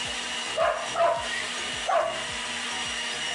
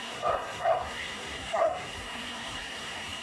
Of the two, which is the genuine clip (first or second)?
first